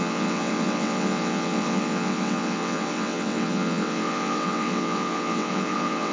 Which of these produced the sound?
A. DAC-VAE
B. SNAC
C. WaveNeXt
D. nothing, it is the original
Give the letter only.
C